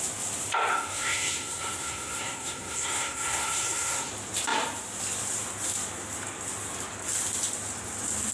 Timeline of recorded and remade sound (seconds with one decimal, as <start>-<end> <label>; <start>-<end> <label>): 0.0-0.7 recorded; 0.7-4.1 remade; 4.1-8.3 recorded